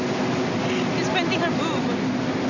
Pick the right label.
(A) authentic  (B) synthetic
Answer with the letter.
A